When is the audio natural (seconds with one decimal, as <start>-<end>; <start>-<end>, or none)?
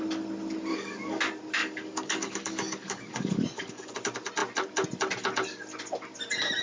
0.0-0.7; 1.2-1.6; 3.9-6.6